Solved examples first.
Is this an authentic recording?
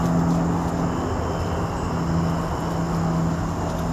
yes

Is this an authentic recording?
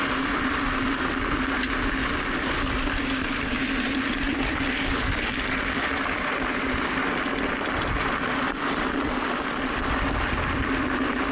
no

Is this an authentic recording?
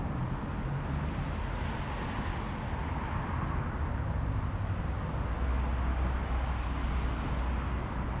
yes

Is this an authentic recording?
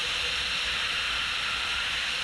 no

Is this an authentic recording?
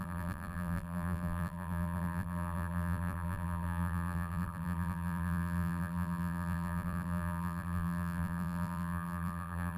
no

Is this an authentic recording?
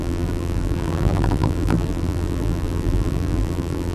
no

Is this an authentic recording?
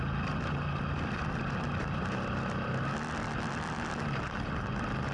yes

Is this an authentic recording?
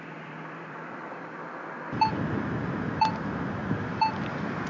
no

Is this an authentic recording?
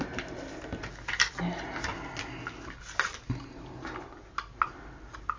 yes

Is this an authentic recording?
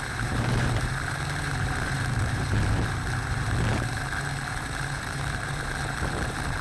no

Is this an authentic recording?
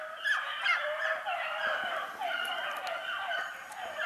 yes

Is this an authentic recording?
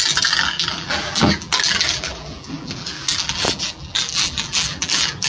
no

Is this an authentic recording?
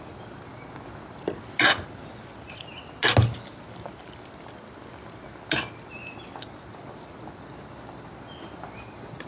yes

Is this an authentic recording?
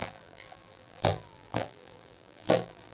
no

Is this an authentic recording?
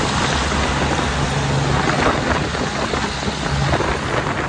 yes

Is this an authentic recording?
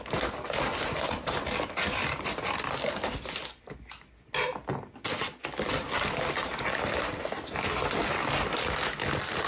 yes